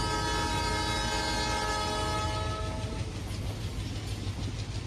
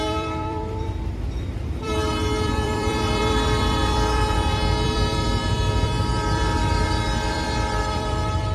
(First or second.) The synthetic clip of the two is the second